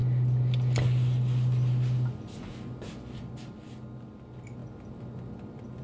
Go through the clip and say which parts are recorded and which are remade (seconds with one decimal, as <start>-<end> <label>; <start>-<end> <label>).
0.0-5.8 recorded